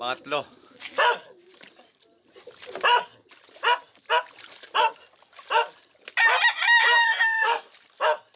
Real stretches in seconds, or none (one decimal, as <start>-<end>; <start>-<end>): 0.0-7.0; 7.7-8.4

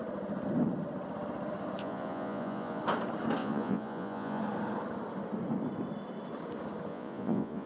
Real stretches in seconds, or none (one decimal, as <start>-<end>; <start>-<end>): 0.0-1.8; 2.8-3.4; 4.4-6.9